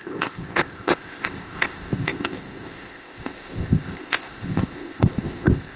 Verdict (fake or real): fake